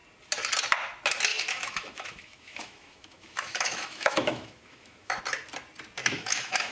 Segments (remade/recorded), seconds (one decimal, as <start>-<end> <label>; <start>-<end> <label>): 0.0-1.3 recorded; 1.3-5.2 remade; 5.2-6.0 recorded; 6.0-6.7 remade